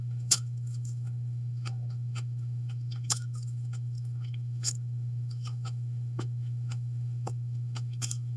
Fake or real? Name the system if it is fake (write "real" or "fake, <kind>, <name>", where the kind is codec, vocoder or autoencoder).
fake, autoencoder, DAC-VAE